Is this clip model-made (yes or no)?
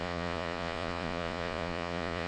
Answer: yes